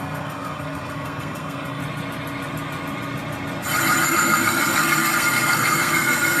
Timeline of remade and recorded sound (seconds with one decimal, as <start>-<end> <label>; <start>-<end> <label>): 0.0-1.8 remade; 1.8-4.0 recorded; 4.0-6.4 remade